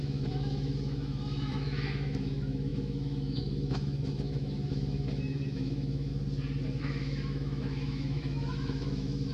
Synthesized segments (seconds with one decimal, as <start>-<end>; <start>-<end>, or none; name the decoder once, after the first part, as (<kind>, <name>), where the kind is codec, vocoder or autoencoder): 0.0-6.1 (autoencoder, DAC-VAE); 6.8-9.3